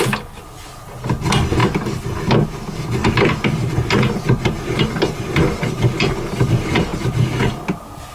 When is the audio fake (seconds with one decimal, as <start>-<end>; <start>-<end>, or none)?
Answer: none

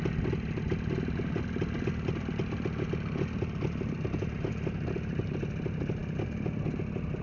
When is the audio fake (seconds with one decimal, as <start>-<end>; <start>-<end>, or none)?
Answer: none

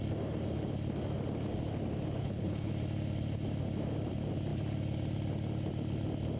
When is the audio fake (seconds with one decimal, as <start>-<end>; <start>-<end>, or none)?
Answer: 2.2-2.7

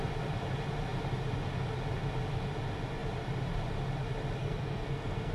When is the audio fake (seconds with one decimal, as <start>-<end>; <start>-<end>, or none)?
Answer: 4.4-5.3

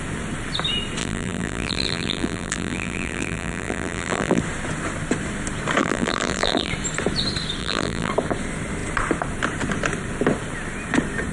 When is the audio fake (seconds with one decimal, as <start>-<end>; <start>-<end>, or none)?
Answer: 1.0-4.4; 5.8-6.7; 7.6-8.1

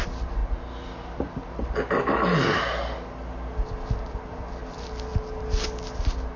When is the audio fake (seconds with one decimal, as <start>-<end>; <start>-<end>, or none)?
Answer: none

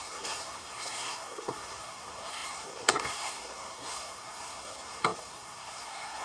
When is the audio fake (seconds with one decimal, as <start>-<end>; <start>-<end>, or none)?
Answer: 0.0-6.2